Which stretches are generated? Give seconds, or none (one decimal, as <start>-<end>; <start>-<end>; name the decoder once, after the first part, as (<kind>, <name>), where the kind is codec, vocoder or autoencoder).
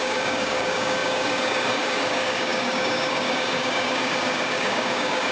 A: 0.0-5.3 (codec, DAC)